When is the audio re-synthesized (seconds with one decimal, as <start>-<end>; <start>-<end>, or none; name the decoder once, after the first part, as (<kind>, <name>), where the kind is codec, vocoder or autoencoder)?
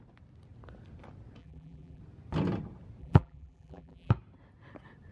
1.4-2.0 (vocoder, BigVGAN v2); 3.0-4.1